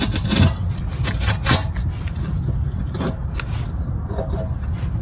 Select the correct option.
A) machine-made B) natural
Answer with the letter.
B